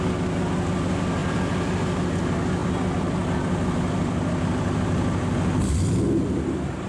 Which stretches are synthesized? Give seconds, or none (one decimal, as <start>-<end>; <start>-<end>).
1.2-1.8; 2.6-6.0